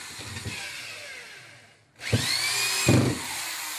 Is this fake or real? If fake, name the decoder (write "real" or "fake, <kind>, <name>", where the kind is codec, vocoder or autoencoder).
real